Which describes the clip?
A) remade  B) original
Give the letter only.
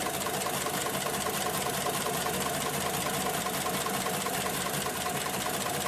A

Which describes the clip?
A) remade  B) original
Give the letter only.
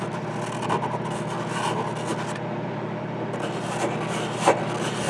B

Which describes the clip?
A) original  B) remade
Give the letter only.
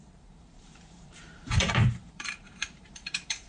B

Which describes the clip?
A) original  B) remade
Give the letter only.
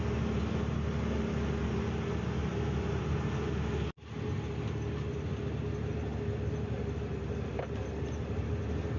A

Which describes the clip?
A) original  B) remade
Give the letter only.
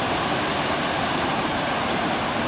B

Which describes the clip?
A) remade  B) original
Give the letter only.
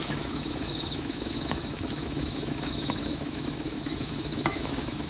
A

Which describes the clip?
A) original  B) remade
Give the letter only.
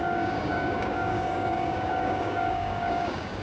B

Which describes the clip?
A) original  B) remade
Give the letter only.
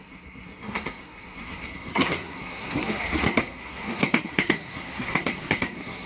B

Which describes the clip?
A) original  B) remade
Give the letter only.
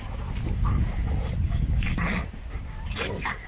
A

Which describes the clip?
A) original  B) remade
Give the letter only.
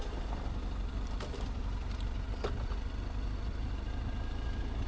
A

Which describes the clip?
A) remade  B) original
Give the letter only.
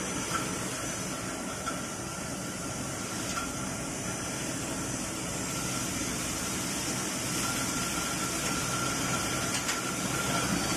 B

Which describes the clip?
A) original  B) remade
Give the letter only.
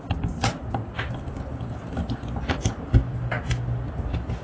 A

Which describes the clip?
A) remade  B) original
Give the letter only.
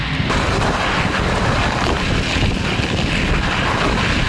B